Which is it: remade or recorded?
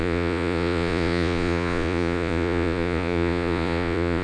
remade